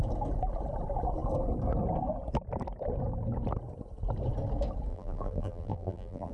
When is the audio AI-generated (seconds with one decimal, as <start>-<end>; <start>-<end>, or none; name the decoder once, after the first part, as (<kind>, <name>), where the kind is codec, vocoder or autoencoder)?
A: 4.9-6.3 (vocoder, BigVGAN v2)

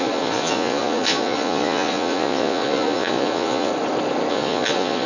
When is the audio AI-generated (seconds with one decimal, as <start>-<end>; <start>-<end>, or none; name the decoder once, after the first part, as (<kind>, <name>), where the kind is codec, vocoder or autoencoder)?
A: 0.0-3.7 (vocoder, Vocos); 4.3-5.1

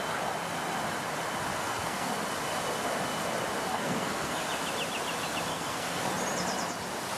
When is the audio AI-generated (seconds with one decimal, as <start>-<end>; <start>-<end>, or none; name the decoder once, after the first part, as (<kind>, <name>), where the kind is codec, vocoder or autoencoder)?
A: 1.5-2.1 (codec, SNAC); 3.7-4.4; 5.5-6.1

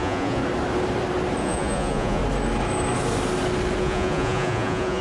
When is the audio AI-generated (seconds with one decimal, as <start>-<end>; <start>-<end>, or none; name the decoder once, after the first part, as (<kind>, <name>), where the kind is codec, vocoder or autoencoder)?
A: 0.0-0.4 (vocoder, Vocos); 1.4-2.2; 3.8-5.0

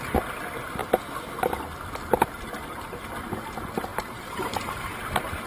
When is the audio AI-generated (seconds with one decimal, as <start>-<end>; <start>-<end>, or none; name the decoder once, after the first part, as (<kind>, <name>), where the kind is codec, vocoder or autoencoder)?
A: 3.9-4.7 (vocoder, BigVGAN v2)

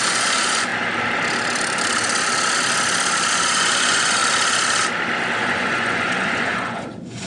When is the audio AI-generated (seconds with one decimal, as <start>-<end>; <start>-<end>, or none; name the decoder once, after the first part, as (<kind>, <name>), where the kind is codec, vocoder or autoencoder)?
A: 0.0-0.7 (vocoder, Vocos); 3.3-4.2; 5.4-7.3

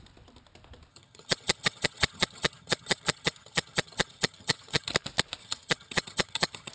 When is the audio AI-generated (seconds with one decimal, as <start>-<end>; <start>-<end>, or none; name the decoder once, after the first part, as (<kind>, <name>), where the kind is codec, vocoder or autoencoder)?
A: 0.9-4.9 (vocoder, HiFi-GAN); 5.4-6.7